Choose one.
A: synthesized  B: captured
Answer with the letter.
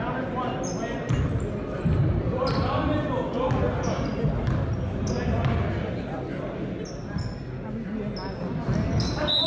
B